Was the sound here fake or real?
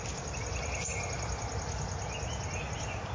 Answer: real